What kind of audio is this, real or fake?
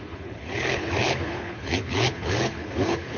fake